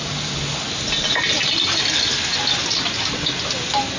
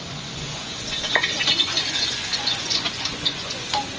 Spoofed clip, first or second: second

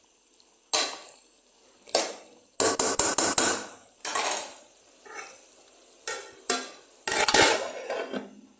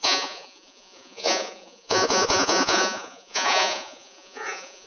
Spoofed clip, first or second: second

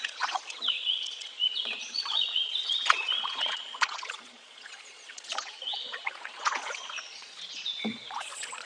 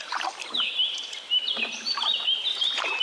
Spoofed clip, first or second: first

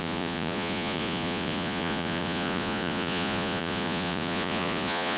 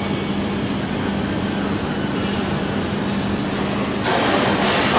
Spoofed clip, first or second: first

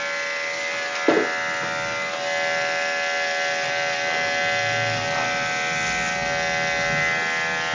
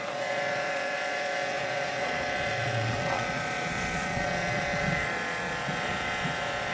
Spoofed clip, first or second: second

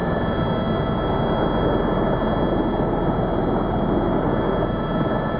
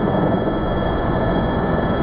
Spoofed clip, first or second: second